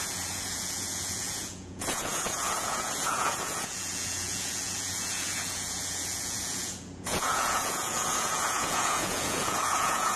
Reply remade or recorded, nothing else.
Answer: remade